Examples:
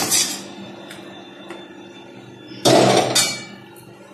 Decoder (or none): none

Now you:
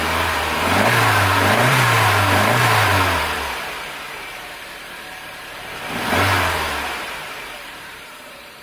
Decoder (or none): vocoder, BigVGAN v2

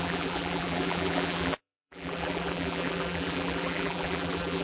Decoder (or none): vocoder, BigVGAN v2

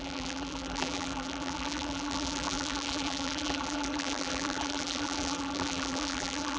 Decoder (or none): vocoder, BigVGAN v2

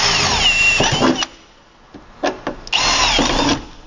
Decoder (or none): none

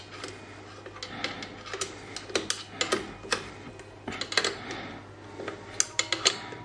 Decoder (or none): none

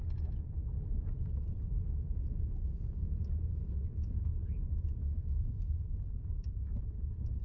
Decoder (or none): vocoder, BigVGAN v2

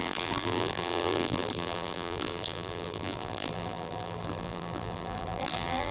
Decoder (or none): vocoder, BigVGAN v2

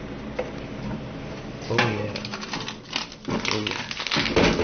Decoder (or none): none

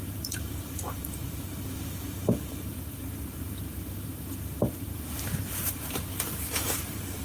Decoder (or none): vocoder, BigVGAN v2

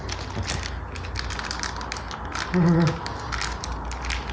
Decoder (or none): none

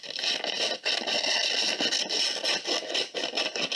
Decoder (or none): none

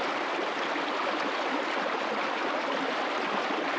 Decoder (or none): none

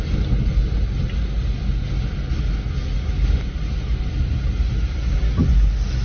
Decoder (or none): none